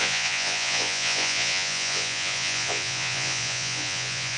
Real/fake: fake